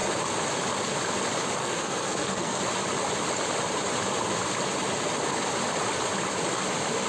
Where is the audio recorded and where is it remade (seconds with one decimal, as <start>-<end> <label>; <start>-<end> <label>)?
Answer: 0.0-1.6 recorded; 1.6-2.6 remade; 2.6-7.1 recorded